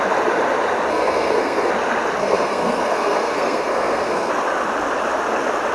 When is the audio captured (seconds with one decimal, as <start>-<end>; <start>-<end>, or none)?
0.0-0.9; 1.7-2.2; 4.3-5.7